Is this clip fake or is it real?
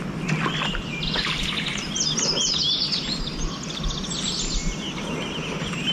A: real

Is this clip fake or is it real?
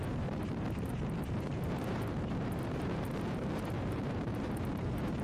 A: fake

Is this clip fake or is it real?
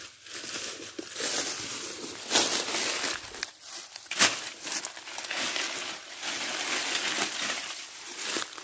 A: real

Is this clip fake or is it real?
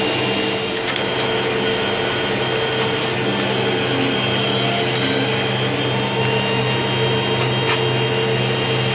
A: real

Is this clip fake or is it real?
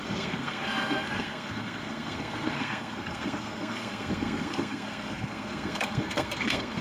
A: fake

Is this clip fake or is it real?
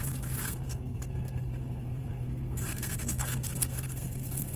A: fake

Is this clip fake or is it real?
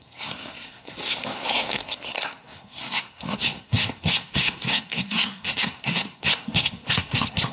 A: fake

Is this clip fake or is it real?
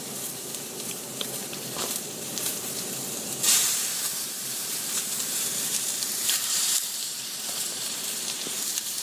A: fake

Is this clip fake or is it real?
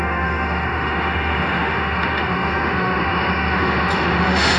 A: fake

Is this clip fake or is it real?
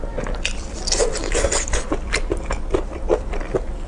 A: real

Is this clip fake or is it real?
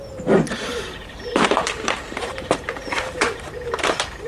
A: fake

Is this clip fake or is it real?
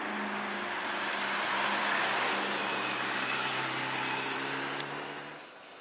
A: real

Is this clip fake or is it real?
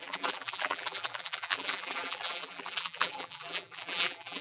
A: fake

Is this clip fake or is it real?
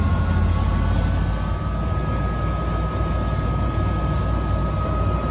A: real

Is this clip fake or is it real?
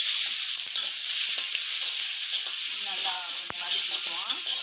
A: real